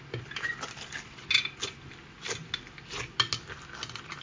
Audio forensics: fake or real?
real